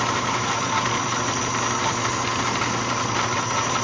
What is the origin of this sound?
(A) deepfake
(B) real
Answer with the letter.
B